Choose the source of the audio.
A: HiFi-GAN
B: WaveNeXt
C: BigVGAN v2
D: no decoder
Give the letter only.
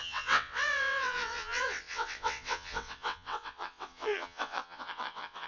B